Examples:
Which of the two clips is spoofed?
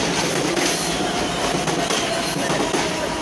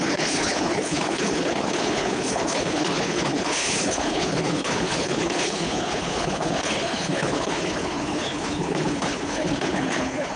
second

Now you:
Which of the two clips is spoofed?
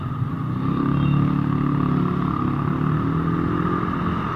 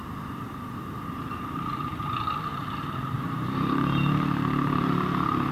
second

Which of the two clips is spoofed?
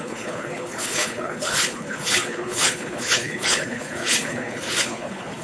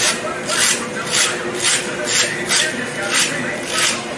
first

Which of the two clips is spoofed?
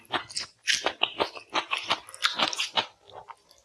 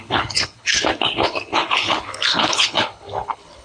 second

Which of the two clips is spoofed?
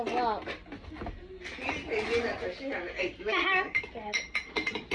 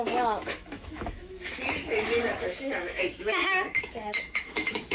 second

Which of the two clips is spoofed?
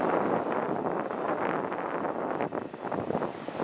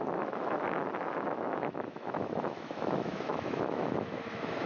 second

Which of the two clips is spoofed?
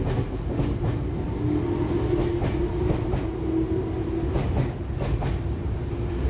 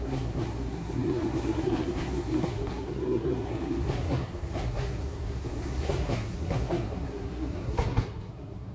second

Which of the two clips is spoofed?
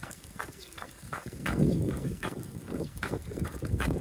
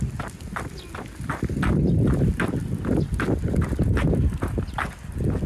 first